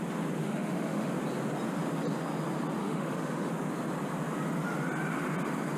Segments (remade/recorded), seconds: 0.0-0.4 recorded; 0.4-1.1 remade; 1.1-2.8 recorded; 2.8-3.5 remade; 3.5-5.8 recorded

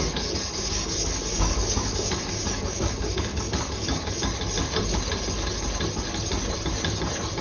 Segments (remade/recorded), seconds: 0.0-4.2 remade; 4.2-7.4 recorded

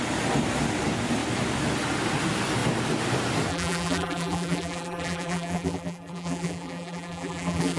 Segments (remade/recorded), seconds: 0.0-3.5 recorded; 3.5-7.8 remade

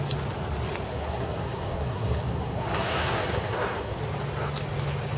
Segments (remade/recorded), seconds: 0.0-0.9 recorded; 0.9-4.0 remade; 4.0-5.2 recorded

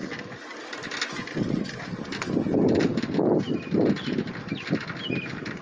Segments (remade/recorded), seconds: 0.0-5.6 recorded